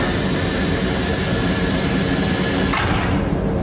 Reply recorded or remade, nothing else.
recorded